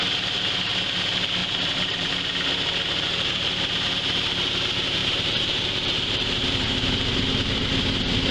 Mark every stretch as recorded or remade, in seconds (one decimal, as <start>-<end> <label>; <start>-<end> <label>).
0.0-1.4 recorded; 1.4-2.1 remade; 2.1-5.0 recorded; 5.0-7.6 remade; 7.6-8.3 recorded